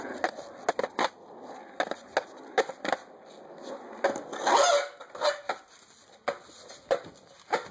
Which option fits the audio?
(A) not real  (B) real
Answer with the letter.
B